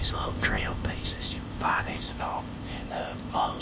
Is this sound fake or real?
fake